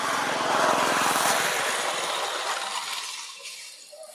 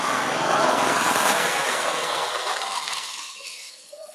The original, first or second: first